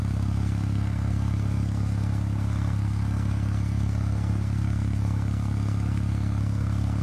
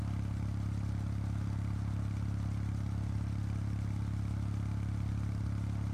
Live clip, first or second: second